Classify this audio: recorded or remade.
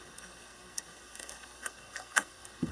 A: remade